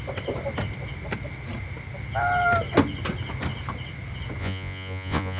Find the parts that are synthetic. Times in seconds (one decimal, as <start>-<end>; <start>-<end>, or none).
4.4-5.4